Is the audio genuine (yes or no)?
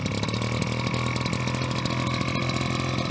yes